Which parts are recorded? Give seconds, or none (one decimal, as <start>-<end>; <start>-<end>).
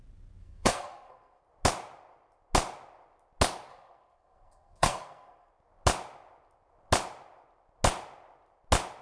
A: 0.0-0.4; 1.4-3.7; 5.5-9.0